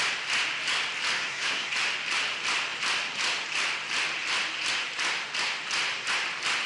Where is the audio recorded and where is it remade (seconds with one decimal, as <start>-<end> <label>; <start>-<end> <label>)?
0.0-1.2 recorded; 1.2-1.7 remade; 1.7-6.7 recorded